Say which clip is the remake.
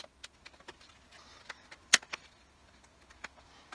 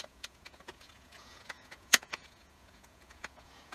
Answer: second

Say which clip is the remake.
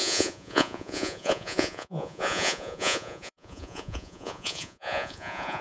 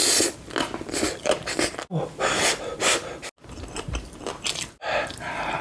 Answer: first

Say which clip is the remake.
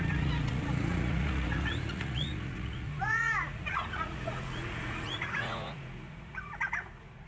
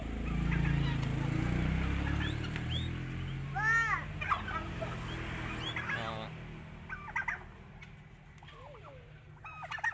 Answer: first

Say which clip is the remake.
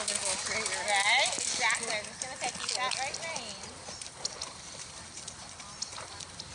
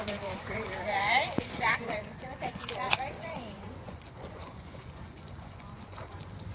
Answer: second